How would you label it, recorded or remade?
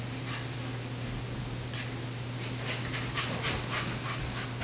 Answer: recorded